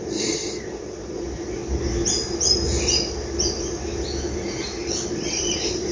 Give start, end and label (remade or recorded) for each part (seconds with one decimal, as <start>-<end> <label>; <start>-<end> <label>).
0.0-1.6 remade; 1.6-5.1 recorded; 5.1-5.9 remade